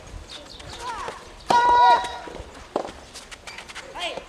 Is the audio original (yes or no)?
yes